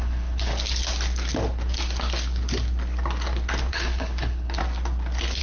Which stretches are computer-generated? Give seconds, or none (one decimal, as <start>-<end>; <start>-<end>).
0.0-0.5; 3.7-4.6